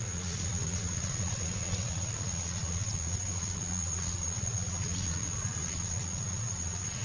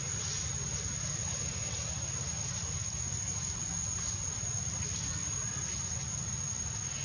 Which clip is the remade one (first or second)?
first